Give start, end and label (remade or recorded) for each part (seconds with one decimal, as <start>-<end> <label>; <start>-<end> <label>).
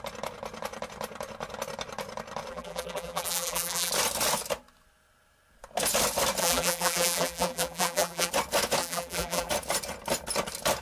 0.0-2.5 recorded; 2.5-3.9 remade; 3.9-6.4 recorded; 6.4-8.3 remade; 8.3-8.8 recorded; 8.8-9.5 remade; 9.5-10.8 recorded